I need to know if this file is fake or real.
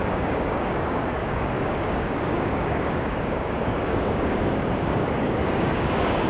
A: fake